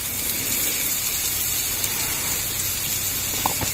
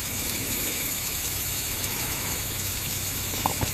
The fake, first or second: second